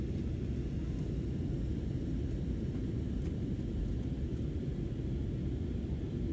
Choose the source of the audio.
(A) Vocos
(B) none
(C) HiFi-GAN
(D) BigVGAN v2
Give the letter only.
B